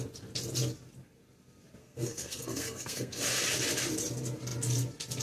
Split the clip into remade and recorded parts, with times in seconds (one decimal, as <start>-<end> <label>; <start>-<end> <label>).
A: 0.0-1.8 recorded; 1.8-3.2 remade; 3.2-5.2 recorded